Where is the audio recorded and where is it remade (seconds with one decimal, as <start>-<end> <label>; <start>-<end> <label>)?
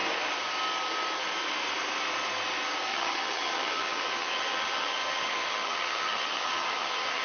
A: 0.0-2.9 recorded; 2.9-7.2 remade